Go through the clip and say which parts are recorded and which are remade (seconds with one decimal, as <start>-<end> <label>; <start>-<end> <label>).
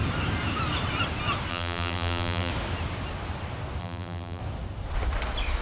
0.0-1.5 recorded; 1.5-2.5 remade; 2.5-3.8 recorded; 3.8-4.4 remade; 4.4-5.6 recorded